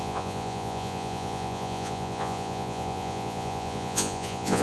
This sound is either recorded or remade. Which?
remade